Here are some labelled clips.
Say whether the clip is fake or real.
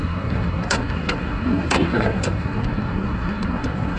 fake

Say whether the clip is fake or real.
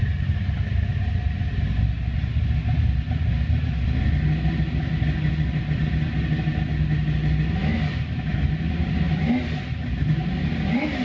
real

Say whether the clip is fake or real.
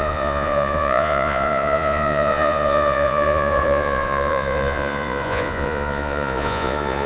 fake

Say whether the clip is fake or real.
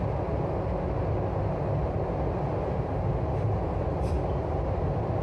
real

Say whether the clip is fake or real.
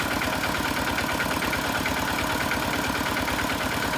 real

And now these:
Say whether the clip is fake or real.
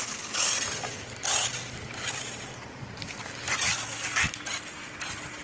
real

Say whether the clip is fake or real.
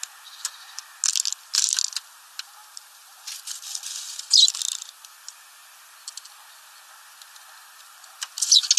real